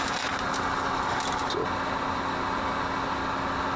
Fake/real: real